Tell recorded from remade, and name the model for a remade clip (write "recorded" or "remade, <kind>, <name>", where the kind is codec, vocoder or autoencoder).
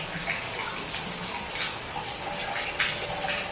recorded